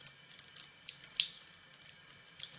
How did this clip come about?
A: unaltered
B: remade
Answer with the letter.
A